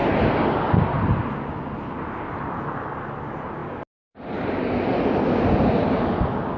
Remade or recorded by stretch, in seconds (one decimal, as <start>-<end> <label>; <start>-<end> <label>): 0.0-1.3 remade; 1.3-6.6 recorded

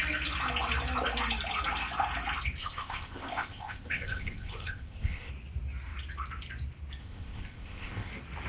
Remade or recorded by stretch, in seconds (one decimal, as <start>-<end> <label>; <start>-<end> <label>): 0.0-2.6 recorded; 2.6-5.3 remade; 5.3-7.0 recorded; 7.0-8.1 remade; 8.1-8.5 recorded

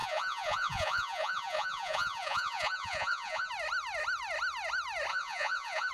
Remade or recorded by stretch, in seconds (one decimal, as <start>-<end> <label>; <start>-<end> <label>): 0.0-3.5 remade; 3.5-5.1 recorded; 5.1-5.9 remade

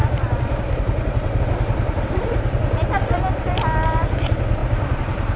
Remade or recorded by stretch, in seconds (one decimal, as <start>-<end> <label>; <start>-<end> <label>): 0.0-1.4 remade; 1.4-4.6 recorded; 4.6-5.4 remade

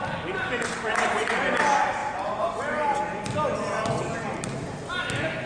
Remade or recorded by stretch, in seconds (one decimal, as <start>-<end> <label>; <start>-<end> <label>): 0.0-0.7 recorded; 0.7-1.3 remade; 1.3-2.0 recorded; 2.0-2.6 remade; 2.6-5.5 recorded

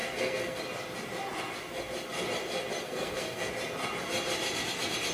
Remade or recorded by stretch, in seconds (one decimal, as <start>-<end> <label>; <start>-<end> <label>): 0.0-0.6 remade; 0.6-2.8 recorded; 2.8-3.5 remade; 3.5-5.1 recorded

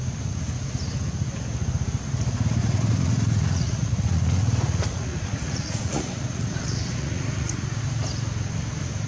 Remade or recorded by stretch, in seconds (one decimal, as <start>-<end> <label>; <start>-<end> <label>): 0.0-2.6 recorded; 2.6-7.8 remade; 7.8-9.1 recorded

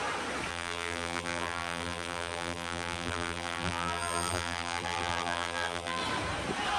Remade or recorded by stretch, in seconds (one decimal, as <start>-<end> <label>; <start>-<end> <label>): 0.0-0.5 recorded; 0.5-6.0 remade; 6.0-6.8 recorded